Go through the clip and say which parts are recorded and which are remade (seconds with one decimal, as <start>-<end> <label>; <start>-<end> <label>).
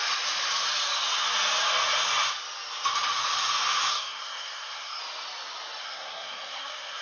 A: 0.0-3.9 recorded; 3.9-5.0 remade; 5.0-5.8 recorded; 5.8-7.0 remade